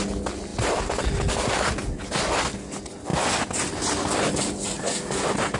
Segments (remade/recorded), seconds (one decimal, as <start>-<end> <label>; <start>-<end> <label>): 0.0-5.6 recorded